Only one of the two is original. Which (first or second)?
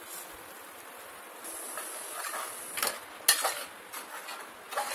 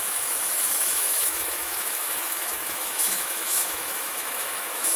first